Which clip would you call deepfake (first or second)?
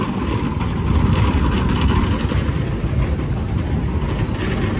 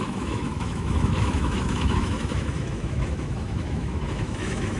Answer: second